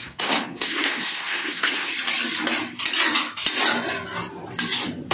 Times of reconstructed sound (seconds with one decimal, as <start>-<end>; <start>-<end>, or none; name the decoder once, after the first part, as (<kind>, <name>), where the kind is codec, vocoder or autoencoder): 0.0-1.9 (codec, SNAC)